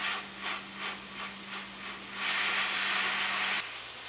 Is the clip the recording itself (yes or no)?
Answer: yes